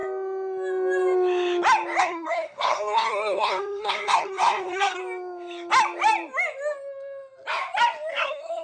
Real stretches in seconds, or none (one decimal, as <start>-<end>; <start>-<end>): 0.0-2.0; 5.0-8.1